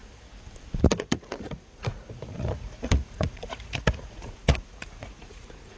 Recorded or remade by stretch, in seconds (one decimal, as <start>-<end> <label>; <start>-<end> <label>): 0.0-0.8 recorded; 0.8-5.8 remade